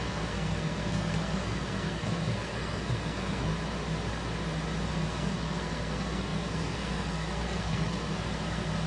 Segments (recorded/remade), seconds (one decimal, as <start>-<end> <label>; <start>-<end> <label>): 0.0-3.5 remade; 3.5-4.9 recorded; 4.9-8.9 remade